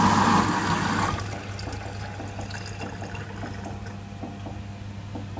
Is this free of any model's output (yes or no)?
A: yes